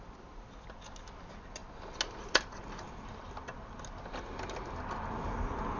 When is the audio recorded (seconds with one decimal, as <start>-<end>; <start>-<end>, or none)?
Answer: 0.0-5.8